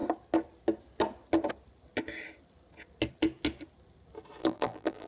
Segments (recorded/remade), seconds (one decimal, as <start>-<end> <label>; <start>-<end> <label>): 0.0-4.4 recorded; 4.4-5.1 remade